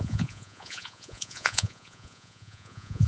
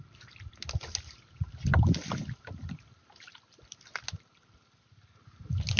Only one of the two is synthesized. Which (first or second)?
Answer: first